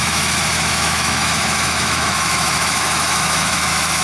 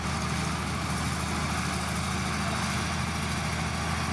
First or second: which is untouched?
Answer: second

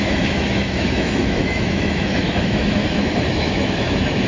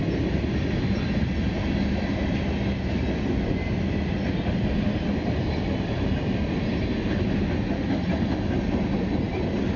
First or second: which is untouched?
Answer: second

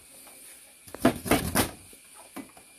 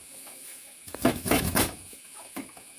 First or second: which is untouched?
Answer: first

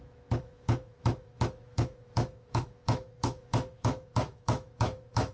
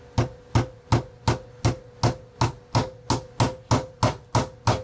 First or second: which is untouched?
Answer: second